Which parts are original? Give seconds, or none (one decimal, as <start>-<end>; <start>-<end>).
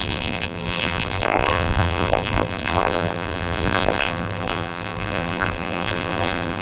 none